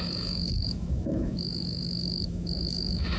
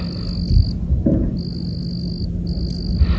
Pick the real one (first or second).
second